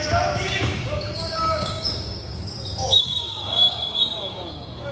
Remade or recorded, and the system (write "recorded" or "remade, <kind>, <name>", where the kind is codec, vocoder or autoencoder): remade, codec, DAC